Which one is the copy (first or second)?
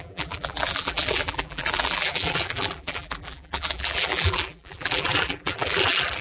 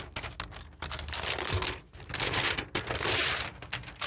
first